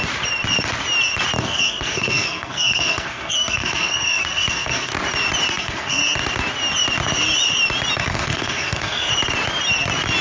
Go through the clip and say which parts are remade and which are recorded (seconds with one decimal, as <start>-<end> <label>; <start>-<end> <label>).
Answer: 0.0-1.4 recorded; 1.4-4.9 remade; 4.9-5.5 recorded; 5.5-6.0 remade; 6.0-8.0 recorded; 8.0-9.1 remade; 9.1-10.2 recorded